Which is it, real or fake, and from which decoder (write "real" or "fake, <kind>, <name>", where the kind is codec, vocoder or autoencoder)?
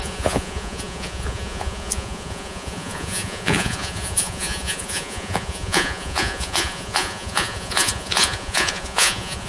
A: fake, vocoder, Vocos